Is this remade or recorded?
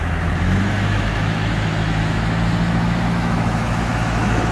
remade